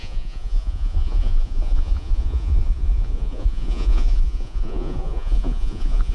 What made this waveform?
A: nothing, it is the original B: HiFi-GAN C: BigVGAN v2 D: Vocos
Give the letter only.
D